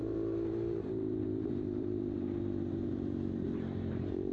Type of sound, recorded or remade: remade